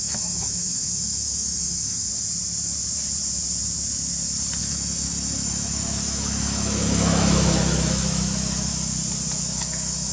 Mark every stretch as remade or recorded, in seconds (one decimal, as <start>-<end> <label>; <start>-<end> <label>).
0.0-2.1 remade; 2.1-4.6 recorded; 4.6-8.7 remade; 8.7-9.4 recorded; 9.4-10.1 remade